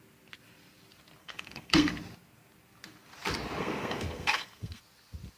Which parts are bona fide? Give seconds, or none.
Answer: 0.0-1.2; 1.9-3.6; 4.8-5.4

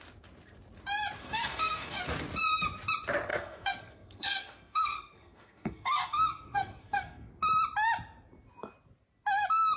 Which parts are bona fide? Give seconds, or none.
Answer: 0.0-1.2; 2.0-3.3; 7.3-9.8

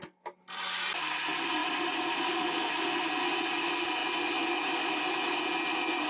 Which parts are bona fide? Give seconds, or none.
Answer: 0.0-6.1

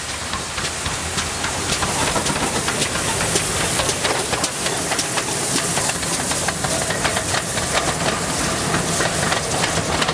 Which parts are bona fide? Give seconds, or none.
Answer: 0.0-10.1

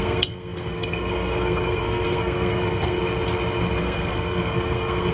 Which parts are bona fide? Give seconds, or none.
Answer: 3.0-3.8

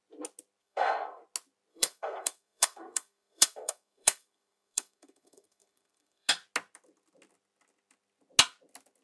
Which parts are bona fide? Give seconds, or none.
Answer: 0.0-0.6; 1.2-1.7; 6.3-9.0

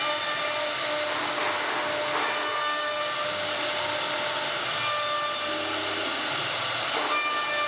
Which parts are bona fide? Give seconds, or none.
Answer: 0.0-2.4; 3.0-7.7